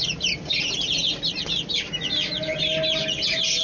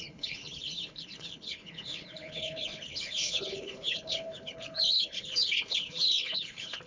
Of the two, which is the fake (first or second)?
second